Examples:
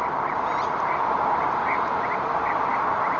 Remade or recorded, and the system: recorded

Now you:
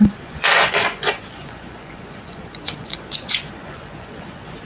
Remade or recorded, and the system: remade, vocoder, Vocos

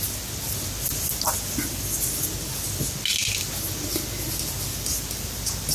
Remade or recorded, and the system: recorded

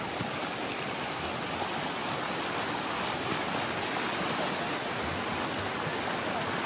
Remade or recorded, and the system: recorded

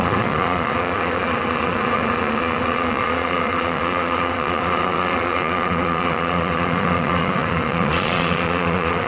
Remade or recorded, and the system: remade, vocoder, Vocos